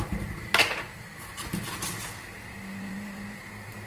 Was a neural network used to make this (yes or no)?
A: yes